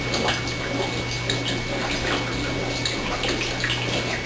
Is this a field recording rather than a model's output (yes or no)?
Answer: yes